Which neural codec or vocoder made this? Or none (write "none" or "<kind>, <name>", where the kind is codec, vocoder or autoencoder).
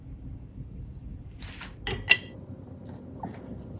none